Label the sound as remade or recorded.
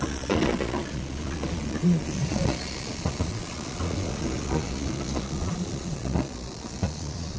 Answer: remade